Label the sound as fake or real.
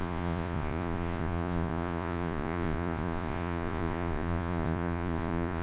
fake